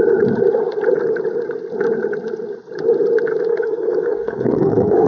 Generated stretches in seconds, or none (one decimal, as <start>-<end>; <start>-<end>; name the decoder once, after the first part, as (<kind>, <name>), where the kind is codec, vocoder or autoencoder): 3.5-5.1 (codec, SNAC)

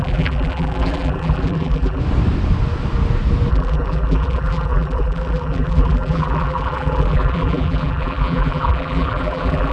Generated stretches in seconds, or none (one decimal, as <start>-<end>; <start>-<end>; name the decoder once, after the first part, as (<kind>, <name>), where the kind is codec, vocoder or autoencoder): 0.0-2.0 (vocoder, BigVGAN v2); 3.5-9.7